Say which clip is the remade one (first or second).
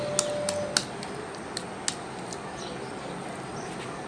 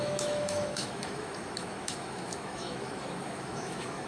second